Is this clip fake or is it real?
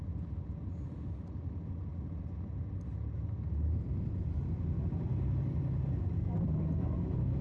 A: real